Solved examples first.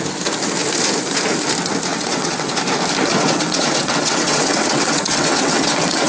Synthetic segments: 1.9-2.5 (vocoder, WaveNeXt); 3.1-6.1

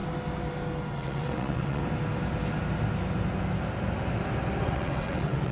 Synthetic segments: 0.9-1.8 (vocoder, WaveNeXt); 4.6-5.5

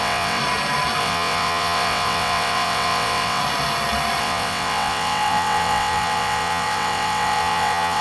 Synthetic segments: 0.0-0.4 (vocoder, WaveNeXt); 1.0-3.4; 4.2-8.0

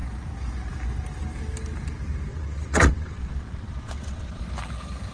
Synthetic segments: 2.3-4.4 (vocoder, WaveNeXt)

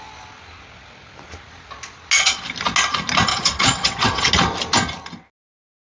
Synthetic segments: 3.3-4.3 (vocoder, WaveNeXt)

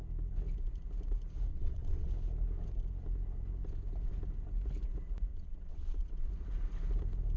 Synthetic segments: 1.5-2.1 (vocoder, WaveNeXt); 5.3-6.3

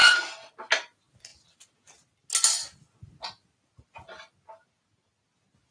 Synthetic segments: 0.0-0.5 (vocoder, WaveNeXt)